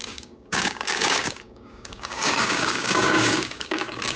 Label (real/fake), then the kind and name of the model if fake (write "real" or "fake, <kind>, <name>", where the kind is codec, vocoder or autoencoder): fake, codec, DAC